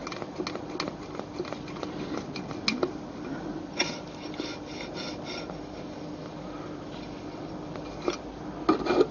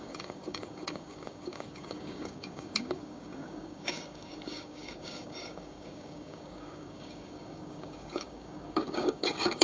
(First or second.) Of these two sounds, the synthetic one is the second